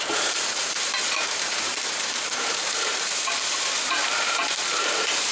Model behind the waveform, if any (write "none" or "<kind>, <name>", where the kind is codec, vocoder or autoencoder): vocoder, BigVGAN v2